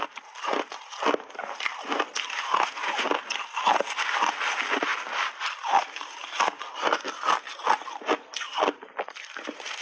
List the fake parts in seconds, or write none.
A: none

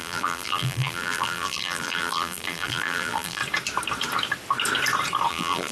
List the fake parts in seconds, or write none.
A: 0.0-3.4 (vocoder, BigVGAN v2); 5.3-5.7

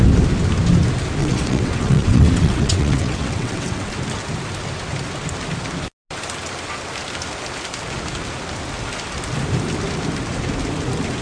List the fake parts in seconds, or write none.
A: 1.2-3.9 (vocoder, WaveNeXt)